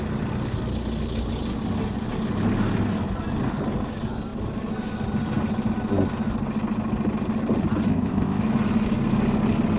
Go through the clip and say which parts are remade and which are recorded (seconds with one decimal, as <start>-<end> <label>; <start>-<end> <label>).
0.0-7.9 recorded; 7.9-8.4 remade; 8.4-9.8 recorded